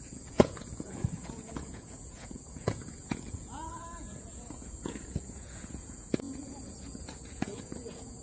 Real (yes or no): no